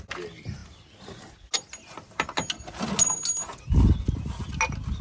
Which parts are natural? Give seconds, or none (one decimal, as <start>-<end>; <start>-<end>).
0.0-5.0